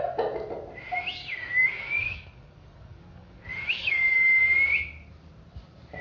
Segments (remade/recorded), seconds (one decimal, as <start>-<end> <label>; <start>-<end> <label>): 0.0-1.2 recorded; 1.2-4.4 remade; 4.4-6.0 recorded

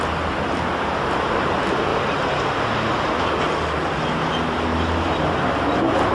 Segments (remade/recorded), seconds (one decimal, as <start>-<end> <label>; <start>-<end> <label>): 0.0-1.9 recorded; 1.9-3.2 remade; 3.2-4.7 recorded; 4.7-5.4 remade; 5.4-6.1 recorded

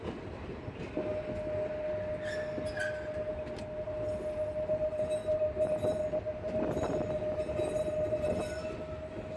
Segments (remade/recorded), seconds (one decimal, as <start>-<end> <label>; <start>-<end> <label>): 0.0-5.2 recorded; 5.2-8.4 remade; 8.4-9.4 recorded

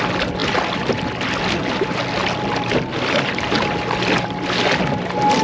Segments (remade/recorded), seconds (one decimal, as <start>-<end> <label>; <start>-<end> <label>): 0.0-5.4 recorded